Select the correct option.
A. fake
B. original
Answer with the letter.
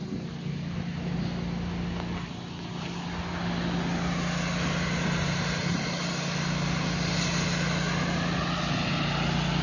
B